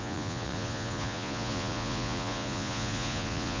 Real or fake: fake